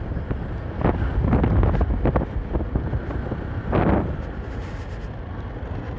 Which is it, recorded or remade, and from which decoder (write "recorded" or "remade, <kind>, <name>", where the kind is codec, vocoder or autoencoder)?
recorded